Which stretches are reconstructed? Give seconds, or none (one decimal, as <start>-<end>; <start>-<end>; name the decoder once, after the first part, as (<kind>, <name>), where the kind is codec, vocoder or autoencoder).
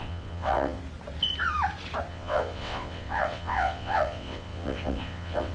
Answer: 0.0-0.8 (vocoder, WaveNeXt); 2.1-5.5